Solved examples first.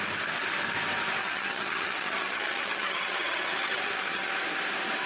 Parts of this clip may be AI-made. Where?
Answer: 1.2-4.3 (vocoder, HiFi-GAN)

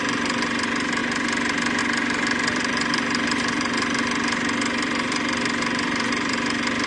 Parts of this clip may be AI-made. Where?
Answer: 0.0-1.0 (vocoder, BigVGAN v2); 1.8-6.9

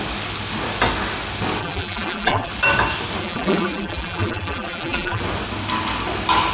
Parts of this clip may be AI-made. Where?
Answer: 1.6-2.5 (vocoder, BigVGAN v2); 3.2-5.2

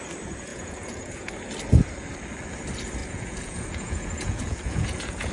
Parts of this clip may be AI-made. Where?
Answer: 0.5-1.3 (vocoder, Vocos); 3.0-5.3

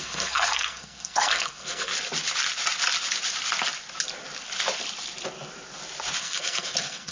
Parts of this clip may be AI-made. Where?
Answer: 0.0-1.9 (codec, SNAC); 6.2-7.1

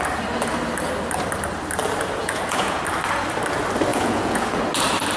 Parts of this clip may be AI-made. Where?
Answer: 2.2-2.8 (vocoder, Vocos); 3.9-4.6

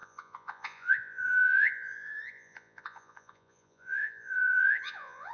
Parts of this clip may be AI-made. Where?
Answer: 0.0-5.3 (vocoder, Vocos)